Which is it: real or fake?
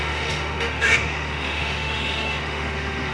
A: fake